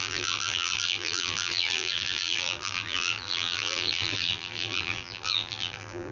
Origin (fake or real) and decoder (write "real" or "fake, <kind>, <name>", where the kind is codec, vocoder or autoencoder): fake, vocoder, BigVGAN v2